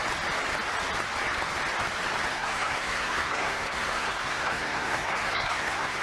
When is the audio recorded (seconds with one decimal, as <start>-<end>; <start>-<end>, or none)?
0.0-2.3